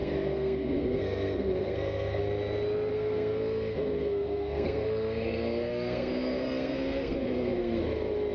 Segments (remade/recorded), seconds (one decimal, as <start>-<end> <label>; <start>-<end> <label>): 0.0-2.2 remade; 2.2-2.9 recorded; 2.9-7.8 remade; 7.8-8.3 recorded